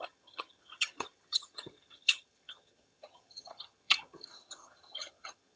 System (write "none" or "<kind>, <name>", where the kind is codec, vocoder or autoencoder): vocoder, HiFi-GAN